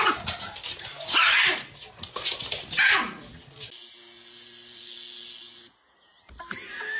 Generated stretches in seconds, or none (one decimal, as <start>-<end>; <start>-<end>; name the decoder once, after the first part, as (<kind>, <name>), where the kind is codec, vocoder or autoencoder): none